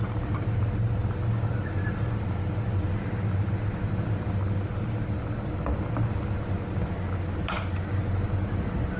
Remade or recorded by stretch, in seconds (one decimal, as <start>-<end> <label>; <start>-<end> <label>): 0.0-9.0 recorded